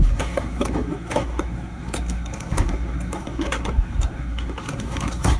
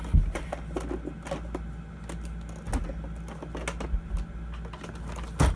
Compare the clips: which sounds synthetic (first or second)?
first